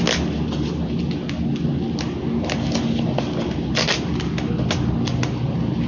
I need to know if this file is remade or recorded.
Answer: recorded